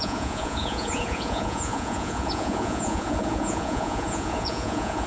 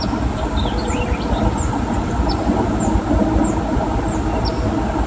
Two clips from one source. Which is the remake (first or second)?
first